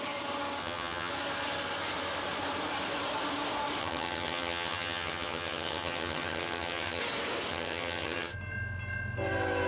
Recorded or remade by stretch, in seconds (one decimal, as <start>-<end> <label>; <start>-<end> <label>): 0.0-0.6 recorded; 0.6-1.1 remade; 1.1-3.8 recorded; 3.8-7.0 remade; 7.0-7.5 recorded; 7.5-8.3 remade; 8.3-9.7 recorded